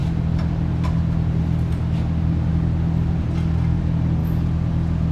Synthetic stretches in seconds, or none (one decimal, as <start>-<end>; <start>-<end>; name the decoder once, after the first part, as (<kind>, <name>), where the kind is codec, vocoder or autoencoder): none